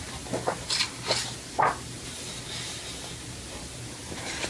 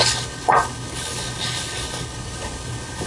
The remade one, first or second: second